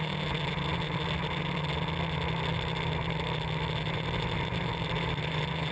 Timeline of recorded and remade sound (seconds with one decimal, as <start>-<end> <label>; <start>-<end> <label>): 0.0-5.7 recorded